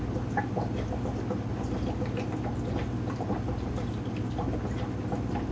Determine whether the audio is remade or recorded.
recorded